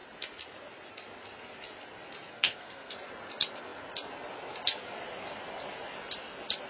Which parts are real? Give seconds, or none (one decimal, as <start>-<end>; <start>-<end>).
0.0-2.3; 2.9-6.7